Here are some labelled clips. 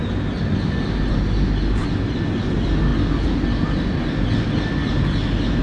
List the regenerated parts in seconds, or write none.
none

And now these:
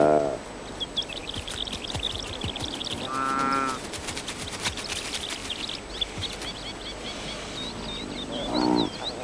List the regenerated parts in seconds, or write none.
none

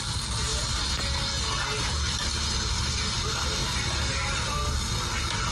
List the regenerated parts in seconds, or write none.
none

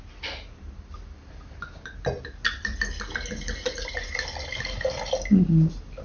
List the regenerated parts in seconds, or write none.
none

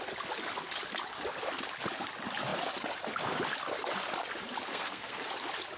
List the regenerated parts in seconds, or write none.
4.7-5.2 (codec, SNAC)

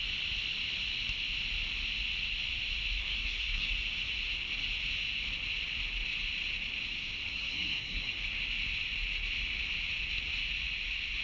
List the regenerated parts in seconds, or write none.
3.0-3.7 (codec, SNAC); 7.3-8.2

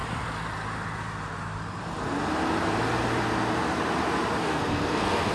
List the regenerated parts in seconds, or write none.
4.4-5.3 (codec, SNAC)